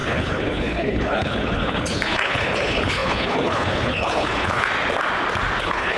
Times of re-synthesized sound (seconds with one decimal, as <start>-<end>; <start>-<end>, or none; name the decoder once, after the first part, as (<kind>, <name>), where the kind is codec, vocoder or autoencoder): 0.0-4.7 (codec, HILCodec); 5.6-6.0